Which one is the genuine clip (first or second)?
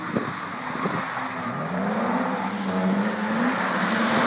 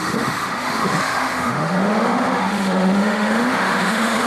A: first